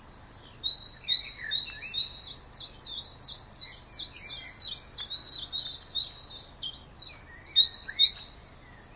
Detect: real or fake real